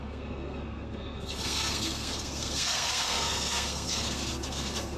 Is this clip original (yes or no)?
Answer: no